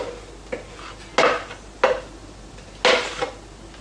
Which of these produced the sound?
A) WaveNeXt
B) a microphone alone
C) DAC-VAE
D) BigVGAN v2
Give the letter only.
B